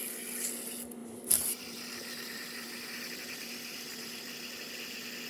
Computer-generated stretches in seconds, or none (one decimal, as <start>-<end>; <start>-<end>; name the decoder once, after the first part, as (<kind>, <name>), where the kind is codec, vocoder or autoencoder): 1.0-4.2 (vocoder, BigVGAN v2)